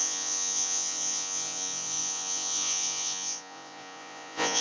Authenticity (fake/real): fake